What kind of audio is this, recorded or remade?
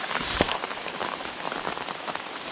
remade